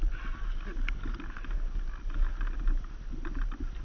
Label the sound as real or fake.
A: real